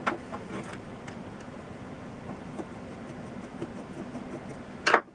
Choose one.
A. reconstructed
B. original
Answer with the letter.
B